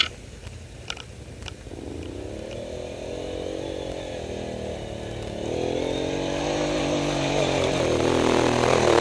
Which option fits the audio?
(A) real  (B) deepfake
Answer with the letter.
A